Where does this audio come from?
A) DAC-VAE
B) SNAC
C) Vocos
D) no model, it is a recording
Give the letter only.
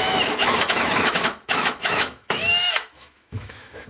A